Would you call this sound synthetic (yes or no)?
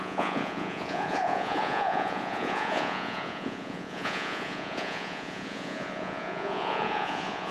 yes